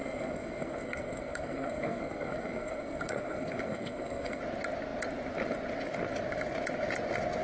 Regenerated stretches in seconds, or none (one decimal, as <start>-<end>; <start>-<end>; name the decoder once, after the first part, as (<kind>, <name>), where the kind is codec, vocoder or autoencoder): 0.0-4.4 (codec, SNAC)

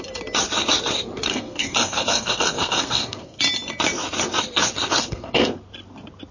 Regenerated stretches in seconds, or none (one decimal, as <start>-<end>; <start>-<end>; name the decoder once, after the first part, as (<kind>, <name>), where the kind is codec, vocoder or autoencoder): 1.3-3.4 (codec, SNAC); 5.0-5.6

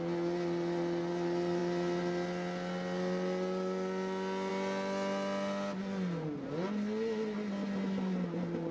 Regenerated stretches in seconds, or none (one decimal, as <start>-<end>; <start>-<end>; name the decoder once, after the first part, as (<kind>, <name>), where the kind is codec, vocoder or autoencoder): none

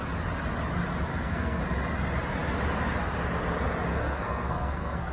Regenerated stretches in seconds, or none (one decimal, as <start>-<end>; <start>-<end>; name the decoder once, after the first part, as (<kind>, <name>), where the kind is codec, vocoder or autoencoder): 1.1-1.6 (codec, SNAC); 3.9-5.1

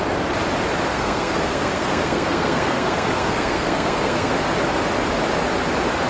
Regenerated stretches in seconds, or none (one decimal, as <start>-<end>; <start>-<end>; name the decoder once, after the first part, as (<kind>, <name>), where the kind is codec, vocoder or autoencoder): 0.9-4.3 (codec, SNAC)

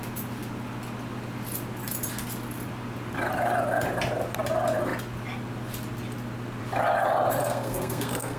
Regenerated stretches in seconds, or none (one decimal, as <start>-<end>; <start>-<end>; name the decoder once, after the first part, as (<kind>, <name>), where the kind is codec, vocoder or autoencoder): 7.4-8.4 (codec, SNAC)